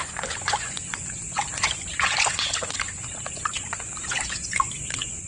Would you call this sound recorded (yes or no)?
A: no